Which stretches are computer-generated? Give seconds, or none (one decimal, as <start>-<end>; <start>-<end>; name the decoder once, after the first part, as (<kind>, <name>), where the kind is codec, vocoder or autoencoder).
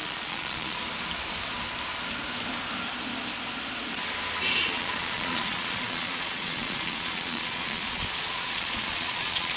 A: 0.0-0.8 (vocoder, Vocos); 4.6-9.6